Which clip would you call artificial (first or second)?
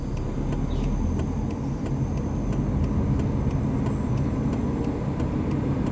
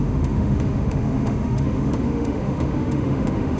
second